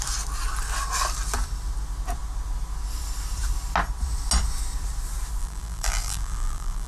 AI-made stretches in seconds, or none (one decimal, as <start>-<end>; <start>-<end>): 5.4-6.9